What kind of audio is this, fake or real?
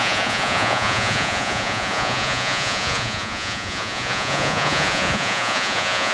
fake